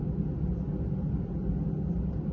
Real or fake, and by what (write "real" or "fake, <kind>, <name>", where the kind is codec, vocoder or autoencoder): real